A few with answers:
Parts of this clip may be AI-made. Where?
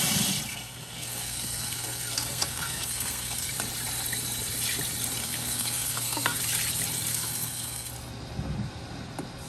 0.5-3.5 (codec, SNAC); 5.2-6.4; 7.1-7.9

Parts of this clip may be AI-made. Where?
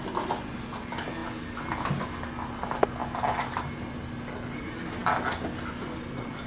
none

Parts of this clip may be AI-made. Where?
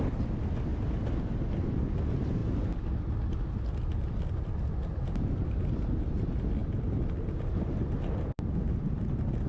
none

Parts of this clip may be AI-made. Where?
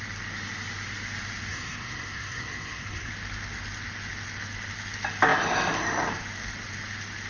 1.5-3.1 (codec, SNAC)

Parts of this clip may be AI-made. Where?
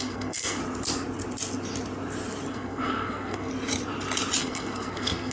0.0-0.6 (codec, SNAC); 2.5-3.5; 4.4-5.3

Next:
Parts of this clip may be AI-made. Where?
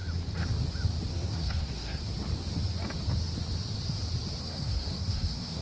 1.1-2.0 (codec, SNAC); 4.4-5.6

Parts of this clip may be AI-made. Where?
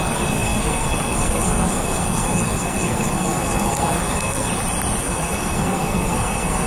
0.0-4.5 (codec, SNAC); 5.0-6.7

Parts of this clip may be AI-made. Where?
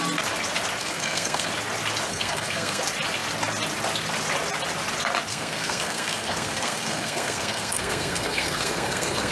0.8-1.5 (codec, SNAC); 2.1-2.8; 5.3-9.3